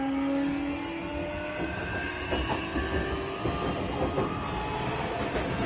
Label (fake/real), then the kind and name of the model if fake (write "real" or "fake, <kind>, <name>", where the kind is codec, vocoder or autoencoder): real